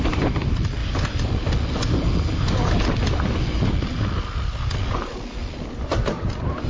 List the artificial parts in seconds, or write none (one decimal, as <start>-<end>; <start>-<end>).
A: none